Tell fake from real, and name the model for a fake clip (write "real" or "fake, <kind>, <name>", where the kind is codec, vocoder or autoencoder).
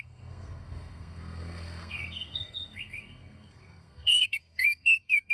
fake, codec, SNAC